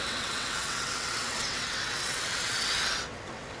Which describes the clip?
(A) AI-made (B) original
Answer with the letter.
A